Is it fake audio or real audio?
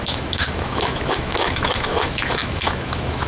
fake